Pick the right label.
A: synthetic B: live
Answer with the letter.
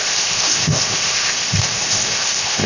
A